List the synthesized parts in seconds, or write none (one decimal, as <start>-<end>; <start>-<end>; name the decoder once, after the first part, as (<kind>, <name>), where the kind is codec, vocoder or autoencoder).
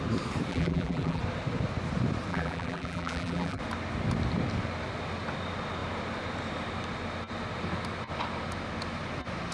0.5-1.2 (vocoder, BigVGAN v2); 2.3-3.6